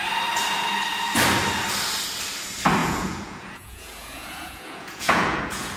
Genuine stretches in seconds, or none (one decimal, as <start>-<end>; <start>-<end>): 0.0-2.8